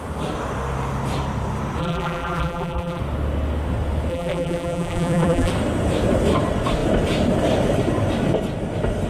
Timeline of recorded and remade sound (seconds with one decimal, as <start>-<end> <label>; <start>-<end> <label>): 0.0-1.8 recorded; 1.8-3.0 remade; 3.0-4.1 recorded; 4.1-5.5 remade; 5.5-9.1 recorded